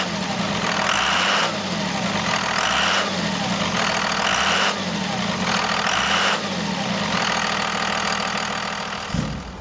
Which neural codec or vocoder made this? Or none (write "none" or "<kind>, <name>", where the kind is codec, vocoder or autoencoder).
none